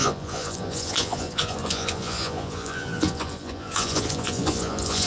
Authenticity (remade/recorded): remade